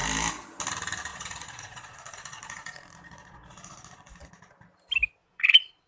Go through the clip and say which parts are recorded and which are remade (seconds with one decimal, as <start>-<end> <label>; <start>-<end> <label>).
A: 0.0-1.1 recorded; 1.1-4.3 remade; 4.3-5.2 recorded; 5.2-5.9 remade